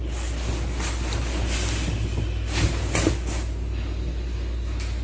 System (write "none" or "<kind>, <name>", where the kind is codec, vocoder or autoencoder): none